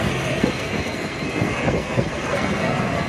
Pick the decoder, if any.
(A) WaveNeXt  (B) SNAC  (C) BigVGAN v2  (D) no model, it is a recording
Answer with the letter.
B